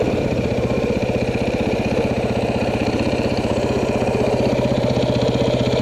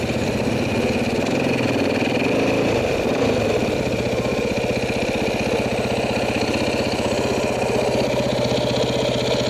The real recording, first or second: second